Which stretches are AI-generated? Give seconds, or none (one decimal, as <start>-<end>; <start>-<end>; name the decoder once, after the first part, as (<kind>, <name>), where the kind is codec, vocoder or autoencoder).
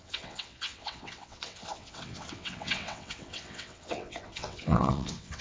0.0-5.4 (vocoder, WaveNeXt)